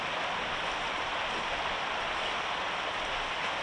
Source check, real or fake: real